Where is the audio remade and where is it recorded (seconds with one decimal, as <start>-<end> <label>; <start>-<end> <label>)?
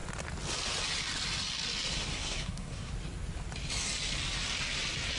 0.0-2.1 recorded; 2.1-2.9 remade; 2.9-5.2 recorded